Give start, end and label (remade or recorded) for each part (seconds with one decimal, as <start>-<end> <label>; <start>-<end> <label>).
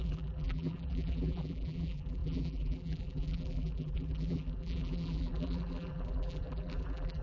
0.0-7.2 remade